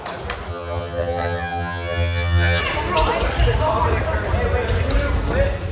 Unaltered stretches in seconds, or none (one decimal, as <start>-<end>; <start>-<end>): 0.0-0.5; 2.6-5.7